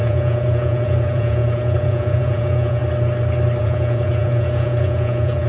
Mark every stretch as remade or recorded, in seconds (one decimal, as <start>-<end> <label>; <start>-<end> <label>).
0.0-2.8 remade; 2.8-3.6 recorded; 3.6-5.5 remade